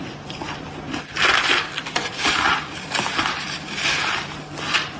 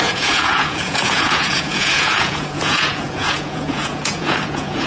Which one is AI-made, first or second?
second